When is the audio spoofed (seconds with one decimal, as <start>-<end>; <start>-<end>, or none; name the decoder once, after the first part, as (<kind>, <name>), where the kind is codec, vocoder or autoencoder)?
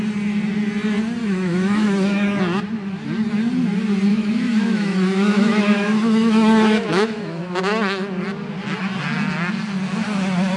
1.2-2.4 (autoencoder, DAC-VAE); 4.1-7.4